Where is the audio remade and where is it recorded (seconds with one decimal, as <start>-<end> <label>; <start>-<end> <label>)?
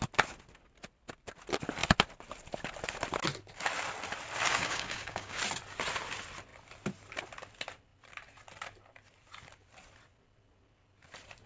0.0-4.5 recorded; 4.5-5.4 remade; 5.4-11.5 recorded